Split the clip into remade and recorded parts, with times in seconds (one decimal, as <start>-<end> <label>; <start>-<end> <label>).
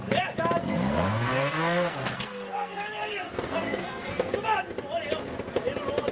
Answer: 0.0-0.6 recorded; 0.6-4.3 remade; 4.3-6.1 recorded